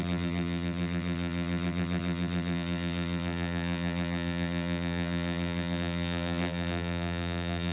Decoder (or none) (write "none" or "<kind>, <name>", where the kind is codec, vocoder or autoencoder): vocoder, BigVGAN v2